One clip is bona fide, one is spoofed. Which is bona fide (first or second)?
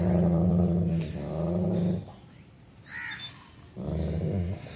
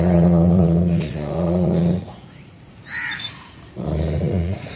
first